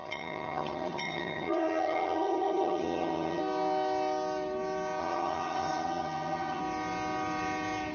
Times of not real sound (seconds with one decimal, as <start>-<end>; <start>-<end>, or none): 0.0-3.4; 5.0-6.6

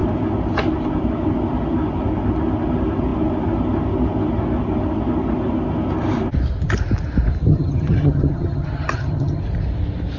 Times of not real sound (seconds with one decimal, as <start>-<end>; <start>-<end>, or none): 7.5-9.4

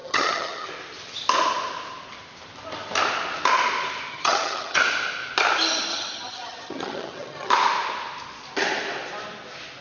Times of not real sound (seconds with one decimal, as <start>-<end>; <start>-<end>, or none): 0.0-0.7; 4.1-4.8; 5.9-7.5

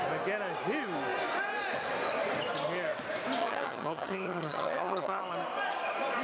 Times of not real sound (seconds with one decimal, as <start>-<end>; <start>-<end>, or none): 3.4-5.2